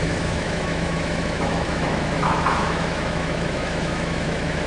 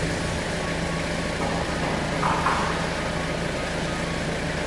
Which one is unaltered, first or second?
second